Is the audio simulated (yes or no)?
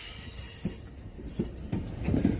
no